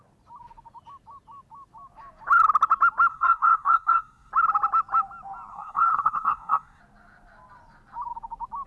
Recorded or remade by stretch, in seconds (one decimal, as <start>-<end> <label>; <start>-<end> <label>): 0.0-3.1 recorded; 3.1-4.3 remade; 4.3-5.5 recorded; 5.5-6.8 remade; 6.8-8.7 recorded